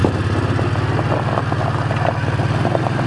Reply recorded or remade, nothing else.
recorded